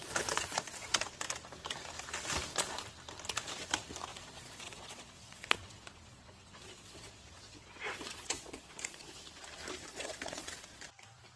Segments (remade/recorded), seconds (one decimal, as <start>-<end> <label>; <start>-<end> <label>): 0.0-1.0 remade; 1.0-4.1 recorded; 4.1-9.1 remade; 9.1-9.9 recorded; 9.9-10.8 remade; 10.8-11.4 recorded